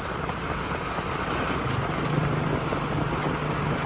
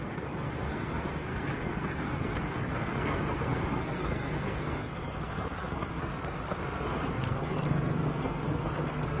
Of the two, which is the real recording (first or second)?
first